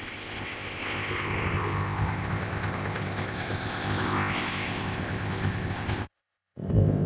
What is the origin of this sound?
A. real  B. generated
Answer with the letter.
B